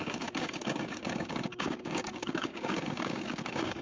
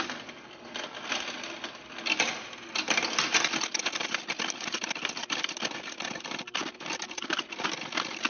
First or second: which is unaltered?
second